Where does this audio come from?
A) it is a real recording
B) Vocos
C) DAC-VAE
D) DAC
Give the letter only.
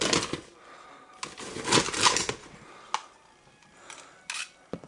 A